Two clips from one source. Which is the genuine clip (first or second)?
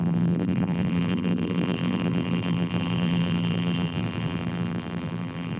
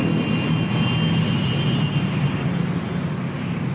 second